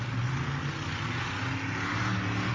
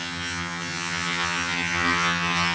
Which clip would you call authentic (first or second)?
first